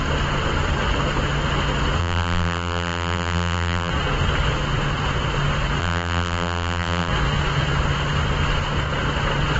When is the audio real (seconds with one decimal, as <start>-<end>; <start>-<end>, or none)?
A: 0.0-2.0; 3.9-5.8; 7.1-9.6